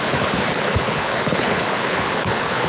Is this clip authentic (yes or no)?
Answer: no